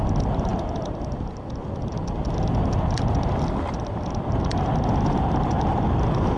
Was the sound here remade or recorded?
recorded